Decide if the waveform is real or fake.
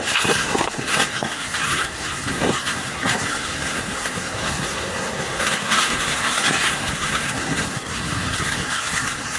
fake